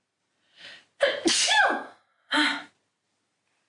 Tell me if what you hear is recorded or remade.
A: recorded